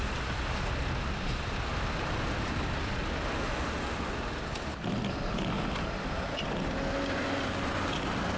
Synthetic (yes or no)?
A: no